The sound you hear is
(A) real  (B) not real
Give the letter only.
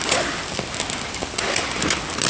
B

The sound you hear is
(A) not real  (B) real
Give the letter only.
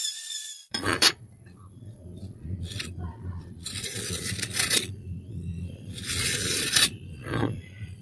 A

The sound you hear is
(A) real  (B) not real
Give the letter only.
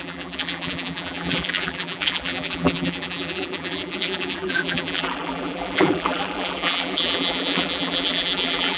B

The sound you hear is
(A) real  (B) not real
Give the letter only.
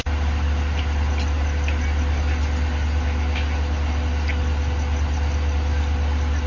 A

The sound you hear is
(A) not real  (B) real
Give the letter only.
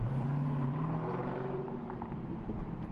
A